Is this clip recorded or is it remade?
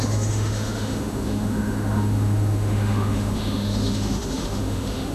remade